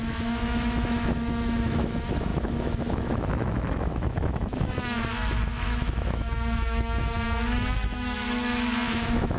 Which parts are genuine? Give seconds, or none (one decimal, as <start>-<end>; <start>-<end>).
none